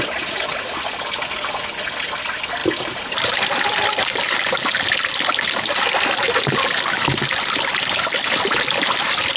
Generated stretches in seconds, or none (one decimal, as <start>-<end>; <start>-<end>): none